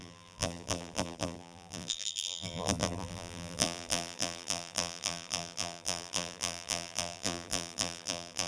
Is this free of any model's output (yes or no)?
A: no